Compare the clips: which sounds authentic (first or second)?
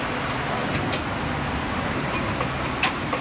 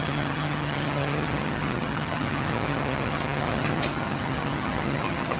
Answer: first